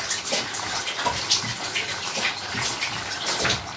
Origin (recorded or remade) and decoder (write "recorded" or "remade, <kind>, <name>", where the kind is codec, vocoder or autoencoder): recorded